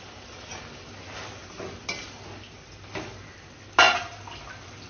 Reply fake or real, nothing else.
real